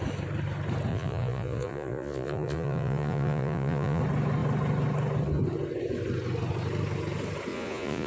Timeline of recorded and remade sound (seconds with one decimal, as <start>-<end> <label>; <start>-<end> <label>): 0.0-0.9 recorded; 0.9-4.0 remade; 4.0-7.5 recorded; 7.5-8.1 remade

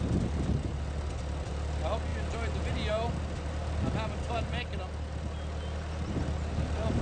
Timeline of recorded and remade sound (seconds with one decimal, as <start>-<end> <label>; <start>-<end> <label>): 0.0-7.0 recorded